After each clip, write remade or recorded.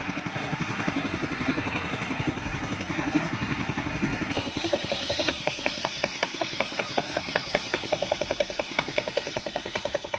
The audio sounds remade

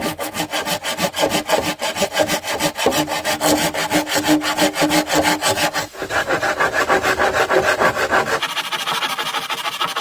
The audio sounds recorded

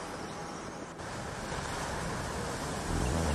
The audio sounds recorded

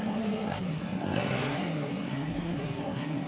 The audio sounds remade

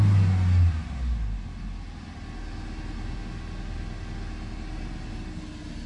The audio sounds recorded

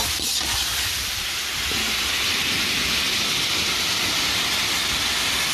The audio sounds recorded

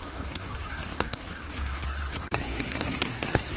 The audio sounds remade